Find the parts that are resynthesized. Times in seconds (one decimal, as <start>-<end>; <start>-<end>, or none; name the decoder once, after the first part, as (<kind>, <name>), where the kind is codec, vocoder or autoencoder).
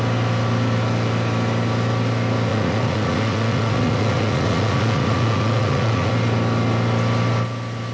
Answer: 2.5-6.1 (vocoder, Vocos)